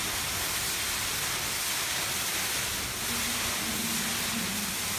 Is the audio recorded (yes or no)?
yes